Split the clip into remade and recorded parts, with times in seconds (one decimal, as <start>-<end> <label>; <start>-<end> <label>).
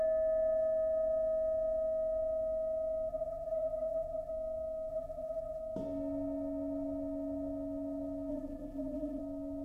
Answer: 0.0-3.1 recorded; 3.1-4.3 remade; 4.3-4.9 recorded; 4.9-5.6 remade; 5.6-8.3 recorded; 8.3-9.2 remade; 9.2-9.6 recorded